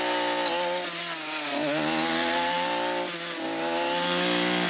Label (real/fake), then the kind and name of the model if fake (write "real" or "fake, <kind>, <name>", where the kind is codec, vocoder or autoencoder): real